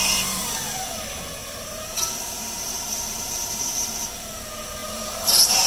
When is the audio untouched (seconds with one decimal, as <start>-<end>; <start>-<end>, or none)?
0.0-1.4; 4.0-4.8